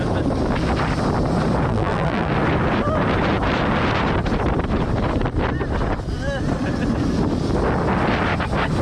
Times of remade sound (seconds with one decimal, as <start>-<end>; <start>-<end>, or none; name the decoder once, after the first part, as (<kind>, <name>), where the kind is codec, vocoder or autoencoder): 1.7-2.3 (vocoder, BigVGAN v2)